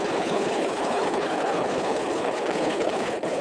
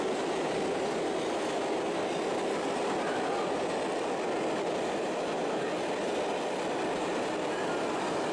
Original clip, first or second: second